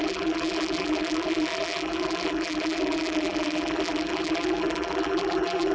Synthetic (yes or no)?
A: yes